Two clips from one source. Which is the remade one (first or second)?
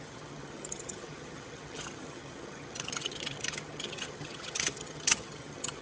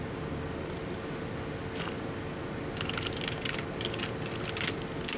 first